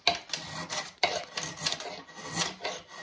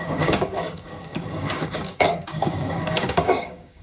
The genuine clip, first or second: first